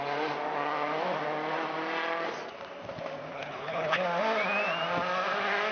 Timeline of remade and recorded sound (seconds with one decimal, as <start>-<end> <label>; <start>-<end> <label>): 0.0-3.3 recorded; 3.3-4.0 remade; 4.0-5.7 recorded